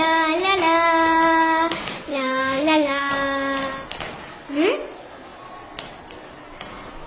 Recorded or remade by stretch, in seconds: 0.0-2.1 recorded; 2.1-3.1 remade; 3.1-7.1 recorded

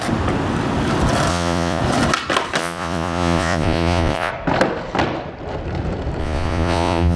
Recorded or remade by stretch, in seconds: 0.0-1.3 recorded; 1.3-1.8 remade; 1.8-2.6 recorded; 2.6-4.3 remade; 4.3-6.2 recorded; 6.2-7.2 remade